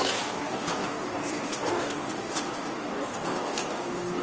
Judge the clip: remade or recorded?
remade